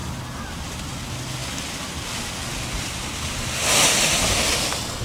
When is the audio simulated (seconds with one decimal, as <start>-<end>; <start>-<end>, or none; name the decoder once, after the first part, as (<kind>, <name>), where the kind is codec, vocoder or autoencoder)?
none